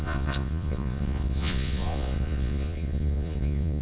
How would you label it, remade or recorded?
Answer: remade